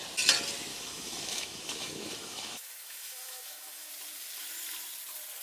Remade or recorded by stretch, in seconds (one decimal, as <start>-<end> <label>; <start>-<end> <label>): 0.0-0.7 recorded; 0.7-3.9 remade; 3.9-5.4 recorded